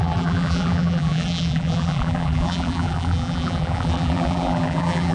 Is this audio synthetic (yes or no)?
yes